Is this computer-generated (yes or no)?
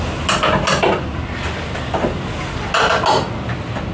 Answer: no